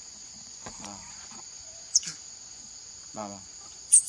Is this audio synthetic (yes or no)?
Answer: yes